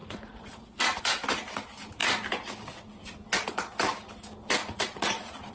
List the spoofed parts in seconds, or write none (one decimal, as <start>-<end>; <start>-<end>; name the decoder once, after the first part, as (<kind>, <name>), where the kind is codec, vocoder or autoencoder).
0.0-1.0 (vocoder, Vocos); 4.6-5.5